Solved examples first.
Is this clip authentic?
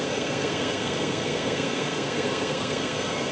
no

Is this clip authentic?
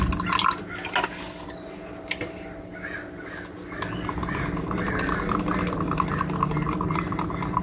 yes